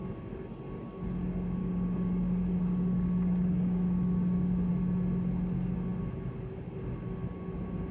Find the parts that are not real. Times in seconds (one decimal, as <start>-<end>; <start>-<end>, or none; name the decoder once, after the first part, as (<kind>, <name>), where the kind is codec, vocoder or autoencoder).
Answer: 1.6-4.7 (codec, DAC)